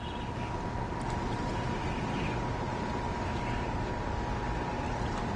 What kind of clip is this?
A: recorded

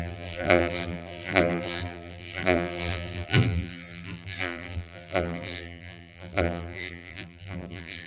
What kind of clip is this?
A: remade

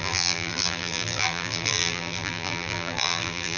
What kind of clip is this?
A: remade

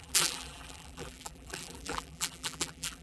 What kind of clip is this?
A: remade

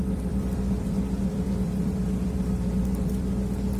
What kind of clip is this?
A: remade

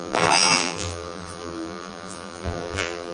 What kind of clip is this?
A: remade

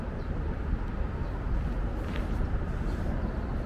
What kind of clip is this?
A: recorded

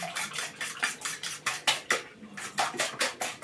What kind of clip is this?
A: recorded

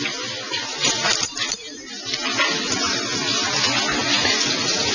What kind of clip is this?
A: remade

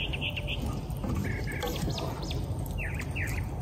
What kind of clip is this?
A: recorded